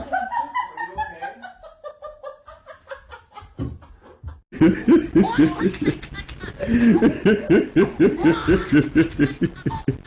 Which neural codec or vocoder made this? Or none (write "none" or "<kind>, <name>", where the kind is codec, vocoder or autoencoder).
none